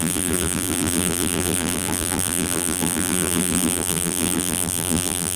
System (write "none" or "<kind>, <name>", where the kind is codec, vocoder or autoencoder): vocoder, BigVGAN v2